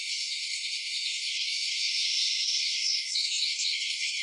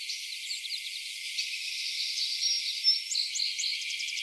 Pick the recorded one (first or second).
second